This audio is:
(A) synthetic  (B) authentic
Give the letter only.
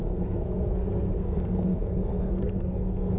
A